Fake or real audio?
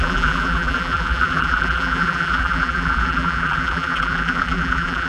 fake